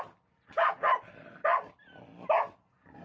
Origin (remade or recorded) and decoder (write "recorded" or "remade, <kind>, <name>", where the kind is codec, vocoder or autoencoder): recorded